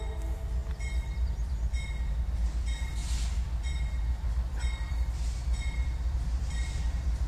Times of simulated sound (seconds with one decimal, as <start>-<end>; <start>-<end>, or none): none

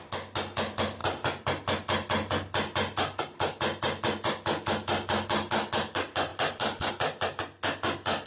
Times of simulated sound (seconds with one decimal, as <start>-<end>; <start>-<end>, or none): none

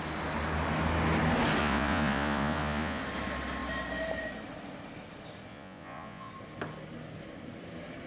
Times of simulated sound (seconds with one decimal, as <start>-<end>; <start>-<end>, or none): 1.6-3.0; 5.5-6.3

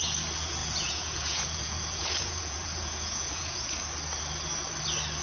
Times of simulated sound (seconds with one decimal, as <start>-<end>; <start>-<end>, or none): 0.6-3.7